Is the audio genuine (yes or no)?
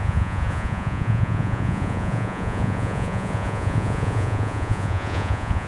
no